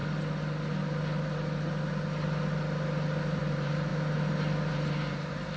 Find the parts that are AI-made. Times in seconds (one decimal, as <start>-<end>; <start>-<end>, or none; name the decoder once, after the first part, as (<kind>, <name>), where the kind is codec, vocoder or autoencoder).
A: 3.4-3.9 (vocoder, BigVGAN v2); 4.7-5.6